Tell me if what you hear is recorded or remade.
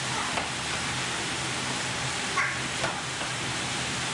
recorded